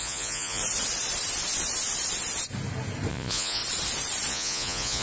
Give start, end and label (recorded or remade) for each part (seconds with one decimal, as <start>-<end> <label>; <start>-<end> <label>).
0.0-0.6 remade; 0.6-3.1 recorded; 3.1-3.6 remade; 3.6-4.3 recorded; 4.3-5.0 remade